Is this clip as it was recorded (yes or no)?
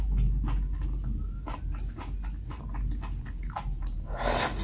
yes